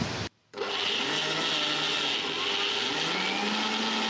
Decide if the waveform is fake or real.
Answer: real